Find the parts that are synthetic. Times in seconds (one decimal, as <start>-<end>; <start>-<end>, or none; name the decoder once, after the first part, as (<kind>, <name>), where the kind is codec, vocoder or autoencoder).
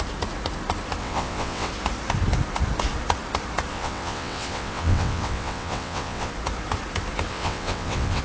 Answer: 1.0-1.7 (vocoder, WaveNeXt); 3.7-6.3; 7.3-8.2